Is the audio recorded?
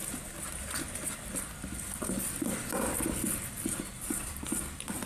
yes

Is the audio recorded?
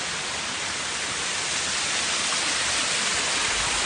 yes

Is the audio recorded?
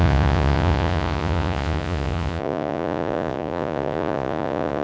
no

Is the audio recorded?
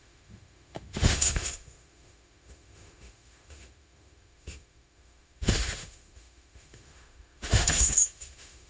no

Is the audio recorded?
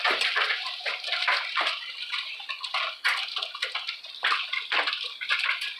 no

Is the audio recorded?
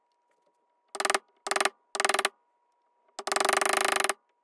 yes